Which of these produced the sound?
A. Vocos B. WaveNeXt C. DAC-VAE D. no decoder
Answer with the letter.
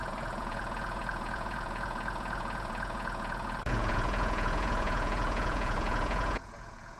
A